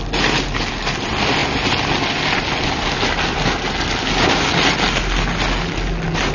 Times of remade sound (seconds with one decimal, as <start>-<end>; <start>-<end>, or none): none